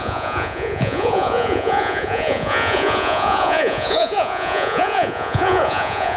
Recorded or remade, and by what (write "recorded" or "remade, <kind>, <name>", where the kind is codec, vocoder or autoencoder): remade, vocoder, Vocos